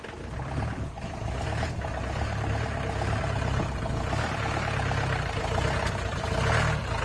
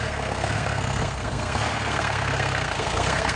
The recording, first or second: first